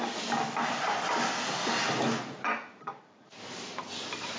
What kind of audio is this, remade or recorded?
remade